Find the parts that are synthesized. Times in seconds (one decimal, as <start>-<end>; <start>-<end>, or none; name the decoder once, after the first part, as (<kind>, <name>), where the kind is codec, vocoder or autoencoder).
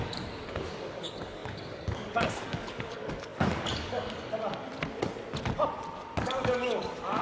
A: 0.0-4.7 (codec, DAC); 6.2-7.2